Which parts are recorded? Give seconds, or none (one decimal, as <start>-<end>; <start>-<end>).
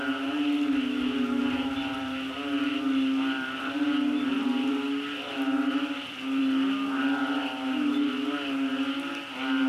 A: 0.0-9.7